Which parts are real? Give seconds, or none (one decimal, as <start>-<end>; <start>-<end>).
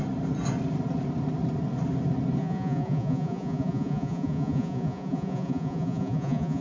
0.0-2.4